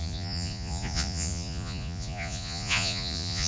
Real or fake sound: fake